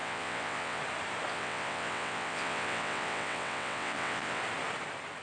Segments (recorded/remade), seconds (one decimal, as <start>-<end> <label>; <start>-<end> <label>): 0.0-0.8 remade; 0.8-1.3 recorded; 1.3-4.4 remade; 4.4-5.2 recorded